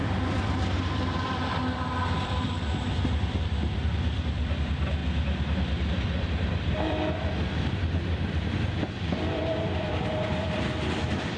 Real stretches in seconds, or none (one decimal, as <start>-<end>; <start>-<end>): 5.0-5.9